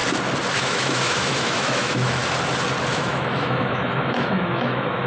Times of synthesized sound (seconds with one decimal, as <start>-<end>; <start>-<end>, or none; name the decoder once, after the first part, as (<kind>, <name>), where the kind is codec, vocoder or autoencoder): 0.5-2.2 (autoencoder, DAC-VAE); 2.9-5.1